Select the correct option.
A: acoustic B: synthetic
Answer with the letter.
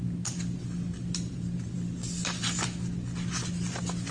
A